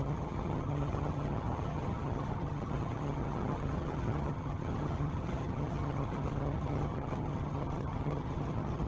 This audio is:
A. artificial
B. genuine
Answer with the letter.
A